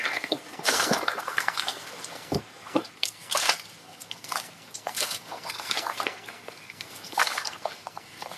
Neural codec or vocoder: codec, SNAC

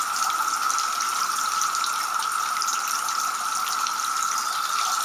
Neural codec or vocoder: none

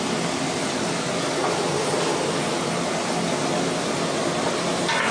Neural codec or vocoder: none